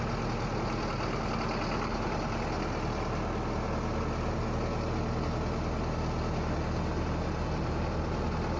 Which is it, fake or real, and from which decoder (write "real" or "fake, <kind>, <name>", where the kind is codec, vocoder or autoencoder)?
real